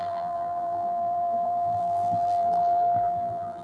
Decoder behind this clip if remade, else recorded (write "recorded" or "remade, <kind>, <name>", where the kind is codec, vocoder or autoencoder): remade, vocoder, BigVGAN v2